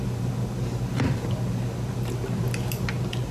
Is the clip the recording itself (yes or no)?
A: yes